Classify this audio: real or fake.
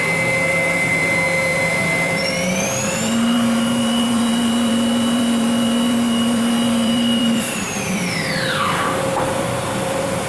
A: fake